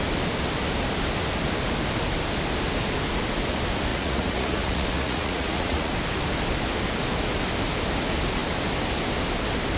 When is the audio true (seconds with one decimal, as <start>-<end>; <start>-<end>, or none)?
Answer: 0.0-3.9; 5.9-9.8